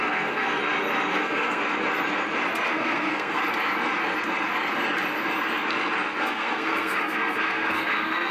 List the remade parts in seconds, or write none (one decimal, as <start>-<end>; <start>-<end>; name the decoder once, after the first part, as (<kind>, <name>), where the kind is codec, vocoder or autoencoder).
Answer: 0.0-0.6 (codec, SNAC); 1.1-1.6; 2.7-3.4; 6.2-8.3